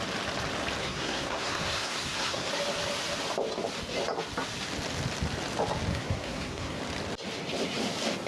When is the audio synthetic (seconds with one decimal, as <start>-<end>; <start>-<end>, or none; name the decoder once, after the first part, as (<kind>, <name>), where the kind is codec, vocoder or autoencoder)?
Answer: 0.8-2.5 (codec, SNAC); 5.9-6.8